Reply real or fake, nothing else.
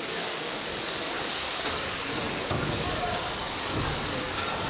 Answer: fake